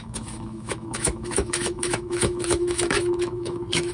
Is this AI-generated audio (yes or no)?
yes